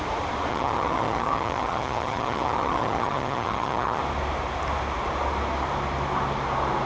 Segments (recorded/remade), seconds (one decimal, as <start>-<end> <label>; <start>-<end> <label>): 0.0-0.5 recorded; 0.5-4.0 remade; 4.0-6.9 recorded